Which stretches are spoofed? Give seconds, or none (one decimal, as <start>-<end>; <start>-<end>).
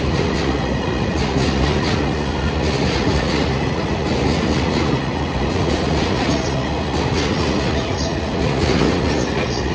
0.0-9.7